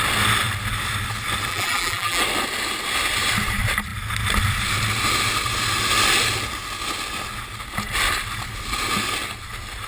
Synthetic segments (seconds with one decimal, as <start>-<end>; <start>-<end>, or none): 1.5-2.2